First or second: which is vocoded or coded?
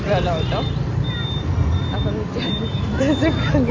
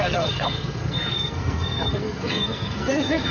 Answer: second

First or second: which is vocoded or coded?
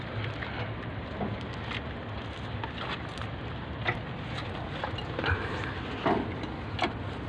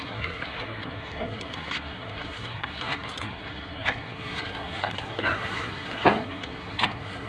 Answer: second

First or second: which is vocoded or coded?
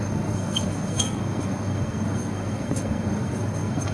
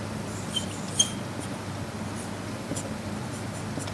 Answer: first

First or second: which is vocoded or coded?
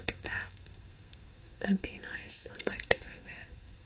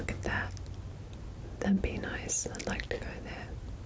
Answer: first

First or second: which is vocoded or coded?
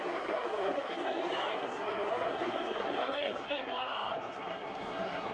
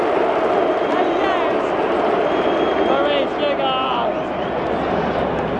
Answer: first